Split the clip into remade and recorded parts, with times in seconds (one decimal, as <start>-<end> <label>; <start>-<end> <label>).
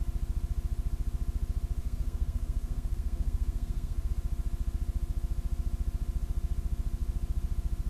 0.0-1.8 recorded; 1.8-4.1 remade; 4.1-7.9 recorded